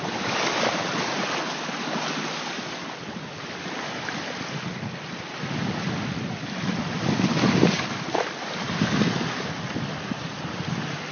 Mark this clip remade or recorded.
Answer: recorded